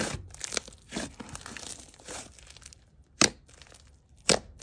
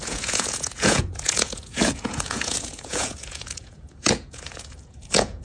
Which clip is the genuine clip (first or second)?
first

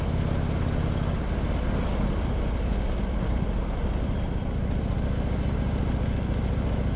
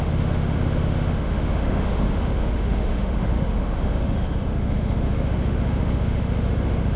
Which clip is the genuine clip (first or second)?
first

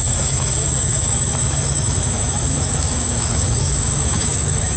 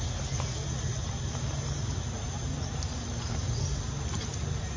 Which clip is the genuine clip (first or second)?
second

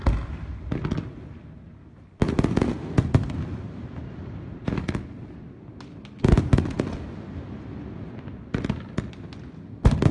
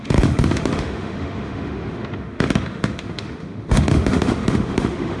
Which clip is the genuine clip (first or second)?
first